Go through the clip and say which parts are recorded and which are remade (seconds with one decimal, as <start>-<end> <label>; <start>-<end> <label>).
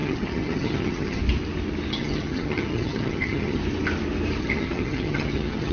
0.0-1.2 remade; 1.2-1.9 recorded; 1.9-3.6 remade; 3.6-4.4 recorded; 4.4-5.7 remade